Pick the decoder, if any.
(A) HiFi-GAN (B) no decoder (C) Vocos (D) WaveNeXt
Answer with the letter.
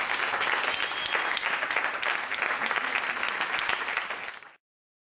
B